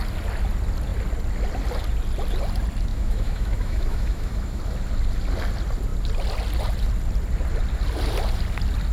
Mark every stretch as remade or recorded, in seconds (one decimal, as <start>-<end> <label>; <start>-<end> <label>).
0.0-2.9 recorded; 2.9-4.6 remade; 4.6-8.9 recorded